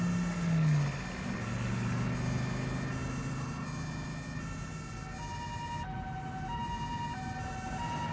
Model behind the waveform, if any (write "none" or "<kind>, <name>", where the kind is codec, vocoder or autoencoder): none